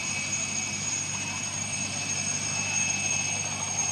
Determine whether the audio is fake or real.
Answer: real